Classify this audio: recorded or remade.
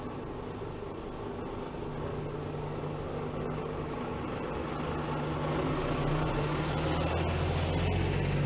recorded